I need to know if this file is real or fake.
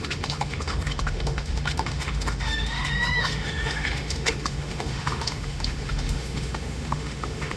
fake